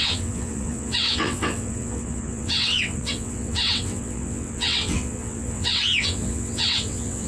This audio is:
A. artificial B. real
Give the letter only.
A